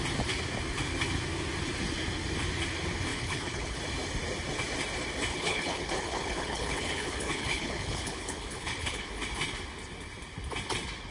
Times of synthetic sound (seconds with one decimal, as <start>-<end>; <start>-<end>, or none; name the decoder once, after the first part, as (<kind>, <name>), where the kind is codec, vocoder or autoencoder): 3.1-3.8 (codec, HILCodec); 5.3-9.1